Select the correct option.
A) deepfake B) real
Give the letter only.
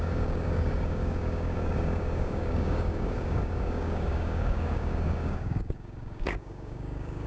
A